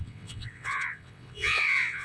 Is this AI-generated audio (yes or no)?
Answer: yes